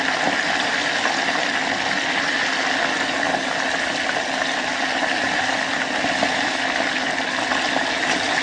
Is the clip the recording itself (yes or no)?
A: yes